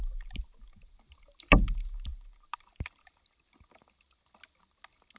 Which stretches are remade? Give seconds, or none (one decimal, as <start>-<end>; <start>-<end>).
none